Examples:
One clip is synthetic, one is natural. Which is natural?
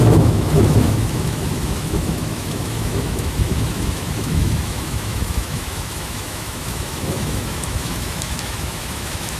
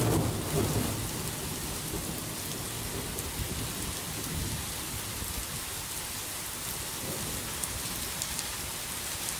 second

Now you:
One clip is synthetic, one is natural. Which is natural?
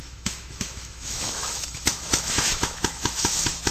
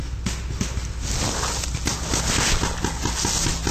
second